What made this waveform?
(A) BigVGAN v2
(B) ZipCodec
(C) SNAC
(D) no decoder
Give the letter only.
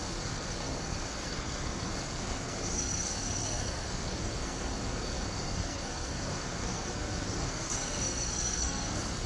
C